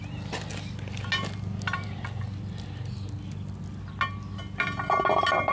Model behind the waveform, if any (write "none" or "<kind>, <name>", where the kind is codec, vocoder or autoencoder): none